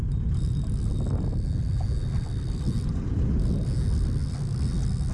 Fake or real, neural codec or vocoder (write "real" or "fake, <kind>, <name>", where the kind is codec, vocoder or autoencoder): real